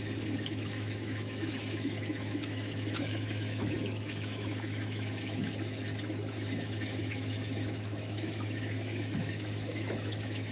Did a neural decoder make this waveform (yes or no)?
yes